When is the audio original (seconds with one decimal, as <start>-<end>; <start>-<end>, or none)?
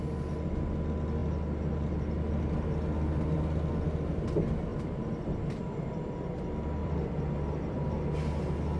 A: 0.0-4.7; 6.1-6.8; 7.9-8.8